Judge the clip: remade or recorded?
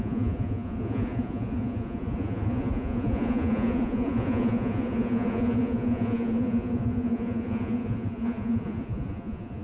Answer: remade